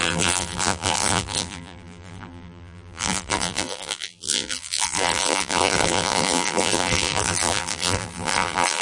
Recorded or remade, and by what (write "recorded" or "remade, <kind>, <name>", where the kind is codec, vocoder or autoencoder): remade, vocoder, BigVGAN v2